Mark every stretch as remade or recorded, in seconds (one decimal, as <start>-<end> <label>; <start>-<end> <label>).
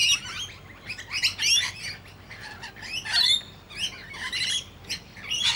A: 0.0-2.4 recorded; 2.4-3.4 remade; 3.4-5.6 recorded